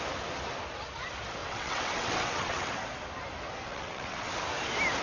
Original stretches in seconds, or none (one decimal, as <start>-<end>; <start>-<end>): 0.0-1.4; 2.7-3.7; 4.3-5.0